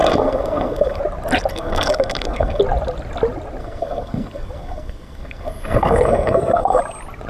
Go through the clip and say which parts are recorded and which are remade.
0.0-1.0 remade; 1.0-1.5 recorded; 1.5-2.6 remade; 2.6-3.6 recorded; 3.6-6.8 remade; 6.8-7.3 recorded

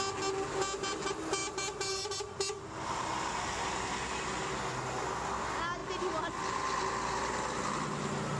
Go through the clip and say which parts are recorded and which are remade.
0.0-8.4 recorded

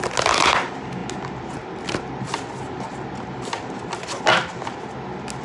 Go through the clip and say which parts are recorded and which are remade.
0.0-5.4 recorded

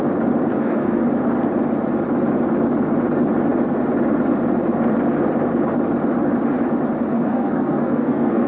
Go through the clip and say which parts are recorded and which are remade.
0.0-0.5 recorded; 0.5-1.0 remade; 1.0-7.1 recorded; 7.1-8.5 remade

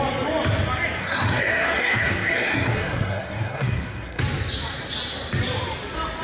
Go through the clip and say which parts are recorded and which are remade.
0.0-1.0 recorded; 1.0-4.2 remade; 4.2-6.2 recorded

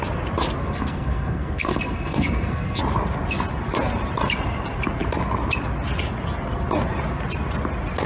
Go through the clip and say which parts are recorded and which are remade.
0.0-0.6 recorded; 0.6-2.8 remade; 2.8-8.1 recorded

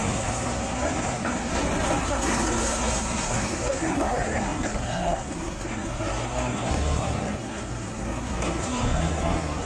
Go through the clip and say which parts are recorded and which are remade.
0.0-1.5 remade; 1.5-2.0 recorded; 2.0-9.7 remade